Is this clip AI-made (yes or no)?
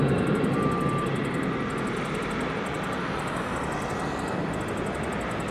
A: no